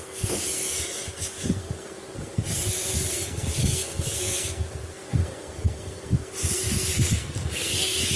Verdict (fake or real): fake